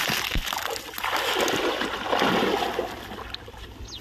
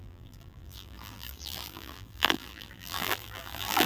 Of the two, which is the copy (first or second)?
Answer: second